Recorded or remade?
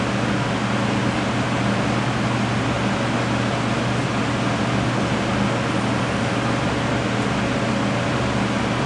recorded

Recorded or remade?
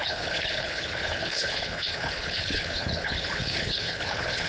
remade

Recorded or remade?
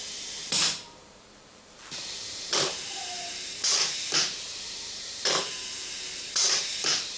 remade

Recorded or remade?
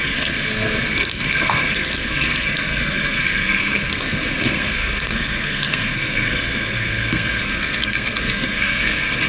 remade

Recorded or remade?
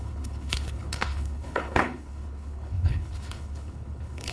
remade